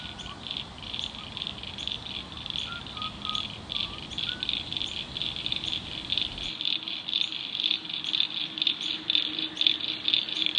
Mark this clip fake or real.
real